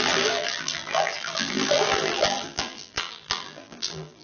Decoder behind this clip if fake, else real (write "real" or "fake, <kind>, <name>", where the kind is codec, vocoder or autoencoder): fake, vocoder, BigVGAN v2